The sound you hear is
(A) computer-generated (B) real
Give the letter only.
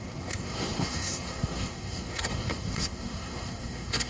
A